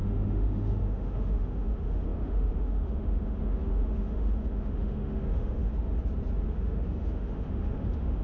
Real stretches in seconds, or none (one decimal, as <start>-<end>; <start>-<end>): 5.7-6.5